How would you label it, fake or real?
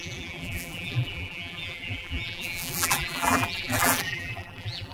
fake